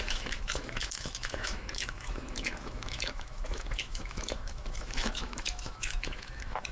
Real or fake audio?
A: fake